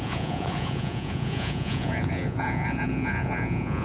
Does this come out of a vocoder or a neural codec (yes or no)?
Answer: yes